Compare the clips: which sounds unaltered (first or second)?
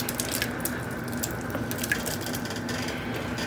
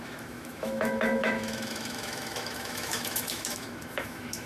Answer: first